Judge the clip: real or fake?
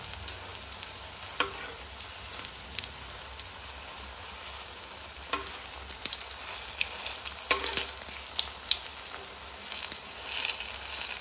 real